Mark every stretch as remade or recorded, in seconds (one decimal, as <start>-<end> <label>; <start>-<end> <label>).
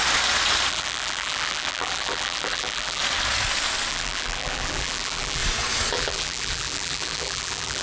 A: 0.0-0.7 recorded; 0.7-3.0 remade; 3.0-3.9 recorded; 3.9-5.4 remade; 5.4-5.9 recorded; 5.9-7.8 remade